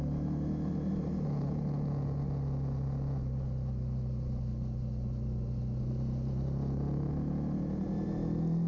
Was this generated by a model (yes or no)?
no